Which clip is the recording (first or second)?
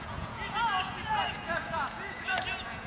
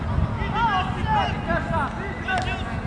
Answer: second